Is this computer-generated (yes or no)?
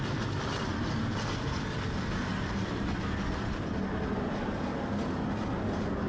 no